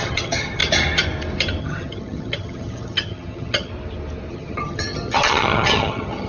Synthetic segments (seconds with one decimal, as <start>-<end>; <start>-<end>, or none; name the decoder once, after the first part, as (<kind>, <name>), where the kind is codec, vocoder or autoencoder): 0.0-0.6 (vocoder, HiFi-GAN); 1.6-3.7; 4.3-6.3